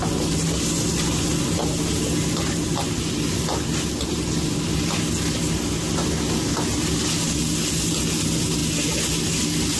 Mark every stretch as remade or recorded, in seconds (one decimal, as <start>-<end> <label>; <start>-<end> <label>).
0.0-9.8 recorded